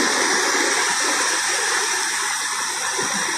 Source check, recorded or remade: recorded